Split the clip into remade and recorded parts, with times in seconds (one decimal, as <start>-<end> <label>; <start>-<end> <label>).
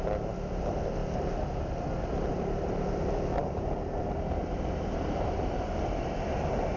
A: 0.0-3.4 recorded; 3.4-5.7 remade; 5.7-6.8 recorded